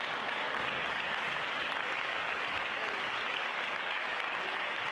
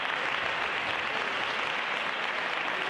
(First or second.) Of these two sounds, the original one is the second